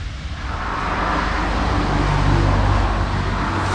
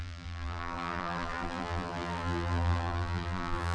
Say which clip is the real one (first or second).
first